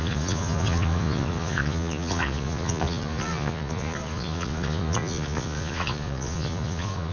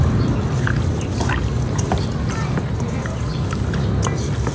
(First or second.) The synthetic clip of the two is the first